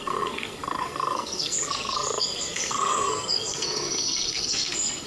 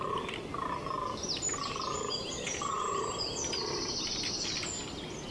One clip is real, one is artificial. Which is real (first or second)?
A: second